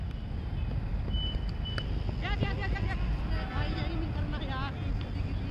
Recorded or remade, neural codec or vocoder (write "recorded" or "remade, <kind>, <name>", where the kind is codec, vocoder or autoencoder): recorded